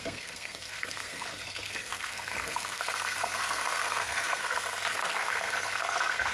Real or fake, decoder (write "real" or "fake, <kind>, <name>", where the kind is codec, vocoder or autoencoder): fake, codec, SNAC